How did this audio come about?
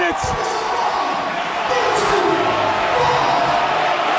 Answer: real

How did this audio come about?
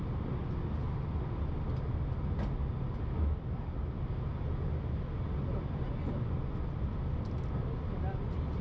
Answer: real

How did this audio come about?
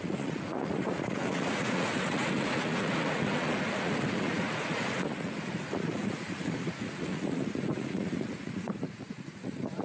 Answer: fake